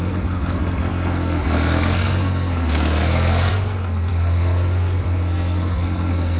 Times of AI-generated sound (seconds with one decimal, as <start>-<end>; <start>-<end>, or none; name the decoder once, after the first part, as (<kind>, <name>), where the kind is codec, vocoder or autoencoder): 0.0-6.4 (codec, SNAC)